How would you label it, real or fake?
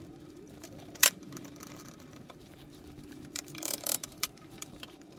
fake